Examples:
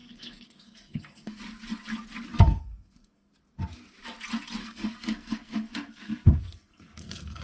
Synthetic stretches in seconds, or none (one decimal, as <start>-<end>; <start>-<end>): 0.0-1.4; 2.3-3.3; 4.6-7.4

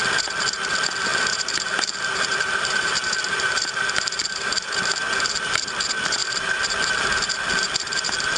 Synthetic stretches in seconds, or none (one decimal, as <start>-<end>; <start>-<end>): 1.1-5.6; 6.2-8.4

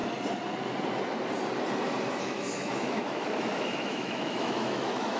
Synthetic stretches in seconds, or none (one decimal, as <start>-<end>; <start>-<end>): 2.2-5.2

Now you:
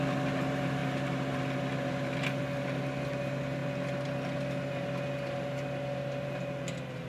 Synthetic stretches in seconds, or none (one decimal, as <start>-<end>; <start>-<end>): none